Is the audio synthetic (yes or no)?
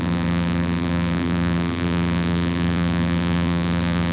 yes